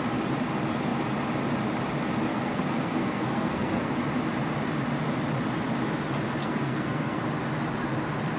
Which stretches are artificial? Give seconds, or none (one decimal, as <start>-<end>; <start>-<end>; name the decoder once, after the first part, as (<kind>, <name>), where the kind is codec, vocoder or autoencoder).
2.3-3.9 (codec, SNAC); 6.4-7.2